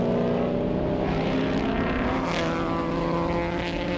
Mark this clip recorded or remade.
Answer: recorded